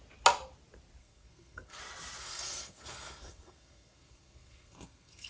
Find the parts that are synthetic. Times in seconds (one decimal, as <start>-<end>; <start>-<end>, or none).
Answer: 1.0-1.8; 2.2-5.3